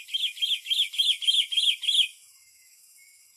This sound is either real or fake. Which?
fake